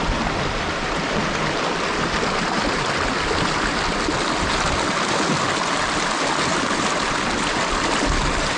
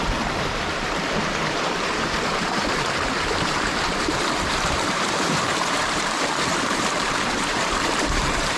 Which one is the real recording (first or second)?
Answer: first